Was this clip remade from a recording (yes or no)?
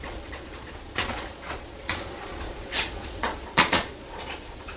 yes